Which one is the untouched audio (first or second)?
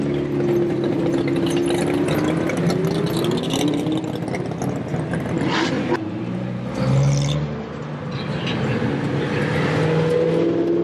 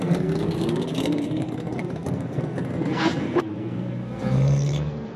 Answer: first